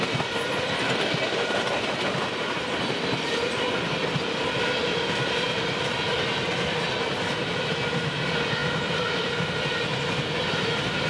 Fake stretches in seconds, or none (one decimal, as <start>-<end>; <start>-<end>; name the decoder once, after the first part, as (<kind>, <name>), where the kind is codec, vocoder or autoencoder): 4.8-5.8 (vocoder, BigVGAN v2); 8.6-9.5; 9.9-10.5